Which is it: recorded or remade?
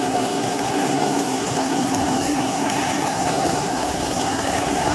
remade